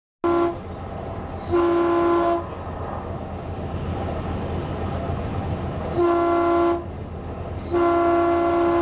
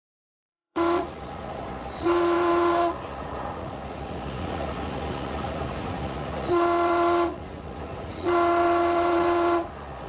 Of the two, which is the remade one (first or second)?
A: second